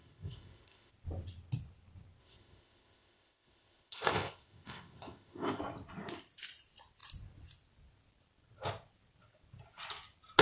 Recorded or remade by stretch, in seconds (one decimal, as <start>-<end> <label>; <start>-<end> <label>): 0.0-0.9 remade; 0.9-2.2 recorded; 2.2-5.6 remade; 5.6-10.4 recorded